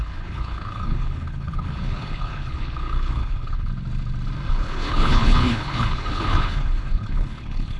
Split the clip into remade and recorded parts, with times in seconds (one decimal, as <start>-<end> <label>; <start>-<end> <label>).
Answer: 0.0-3.7 remade; 3.7-4.5 recorded; 4.5-7.8 remade